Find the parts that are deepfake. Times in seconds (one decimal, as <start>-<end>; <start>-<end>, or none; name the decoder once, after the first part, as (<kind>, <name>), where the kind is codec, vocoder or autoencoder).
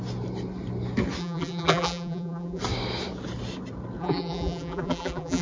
1.2-2.6 (vocoder, BigVGAN v2); 4.0-5.4